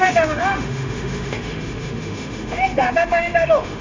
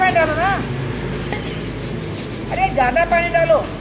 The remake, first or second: first